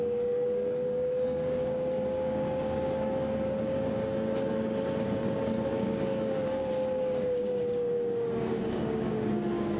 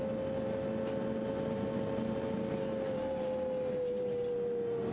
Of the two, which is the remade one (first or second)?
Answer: first